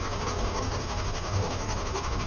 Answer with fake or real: fake